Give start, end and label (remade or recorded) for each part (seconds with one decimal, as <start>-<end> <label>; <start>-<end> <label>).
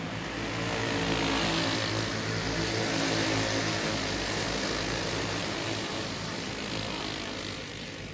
0.0-5.4 recorded; 5.4-7.0 remade; 7.0-8.1 recorded